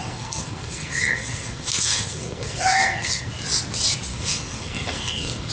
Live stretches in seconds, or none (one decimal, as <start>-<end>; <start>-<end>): 3.3-4.1